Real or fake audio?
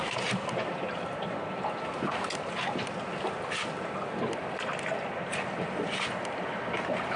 real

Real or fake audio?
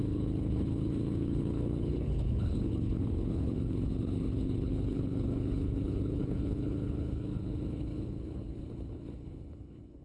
fake